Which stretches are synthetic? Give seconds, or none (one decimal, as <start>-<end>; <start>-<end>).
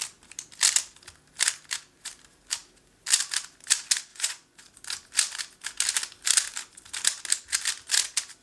4.1-4.6